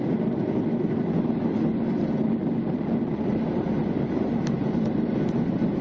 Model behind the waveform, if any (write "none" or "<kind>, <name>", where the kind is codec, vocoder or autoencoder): none